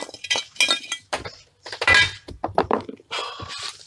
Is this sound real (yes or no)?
yes